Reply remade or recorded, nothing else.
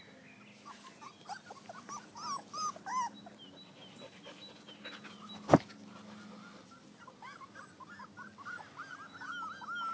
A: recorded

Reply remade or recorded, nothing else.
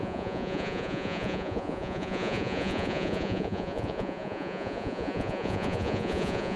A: remade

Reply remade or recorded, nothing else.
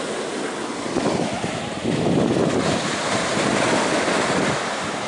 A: recorded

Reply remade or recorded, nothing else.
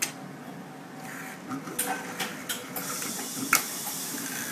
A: recorded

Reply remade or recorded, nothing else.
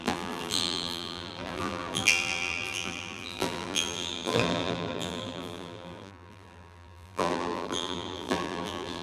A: remade